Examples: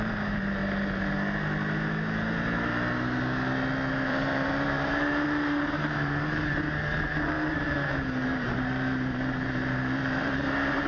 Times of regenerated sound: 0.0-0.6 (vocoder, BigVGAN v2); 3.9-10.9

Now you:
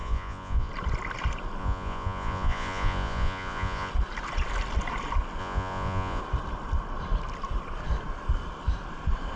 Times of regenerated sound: 0.0-0.7 (vocoder, Vocos); 1.6-3.9; 5.4-6.2

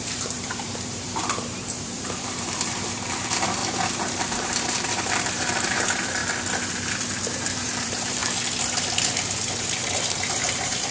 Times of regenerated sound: 0.0-3.6 (vocoder, BigVGAN v2); 4.2-6.2; 6.7-8.2; 9.0-10.9

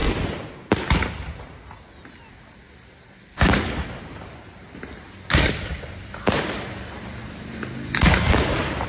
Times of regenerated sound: 2.1-7.2 (vocoder, BigVGAN v2); 8.3-8.9

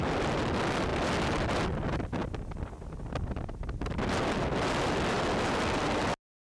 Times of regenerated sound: none

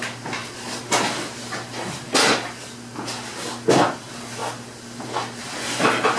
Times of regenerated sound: none